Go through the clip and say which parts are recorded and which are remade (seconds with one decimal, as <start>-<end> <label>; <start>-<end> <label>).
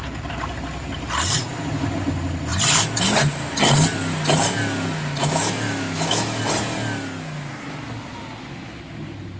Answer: 0.0-5.2 recorded; 5.2-6.4 remade; 6.4-9.4 recorded